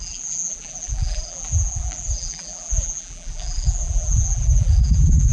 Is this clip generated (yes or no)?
yes